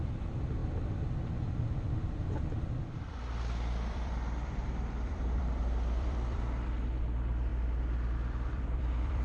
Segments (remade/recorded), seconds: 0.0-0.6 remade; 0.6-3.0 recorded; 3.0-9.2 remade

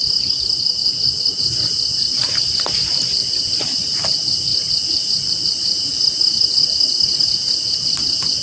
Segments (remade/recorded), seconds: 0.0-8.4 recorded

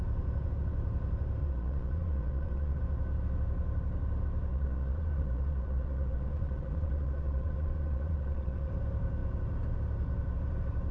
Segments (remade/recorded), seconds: 0.0-1.4 recorded; 1.4-2.8 remade; 2.8-4.5 recorded; 4.5-8.7 remade; 8.7-10.9 recorded